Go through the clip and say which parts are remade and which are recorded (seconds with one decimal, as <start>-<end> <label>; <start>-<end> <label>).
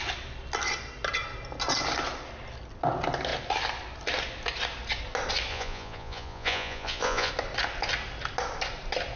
0.0-5.5 recorded; 5.5-7.3 remade; 7.3-9.2 recorded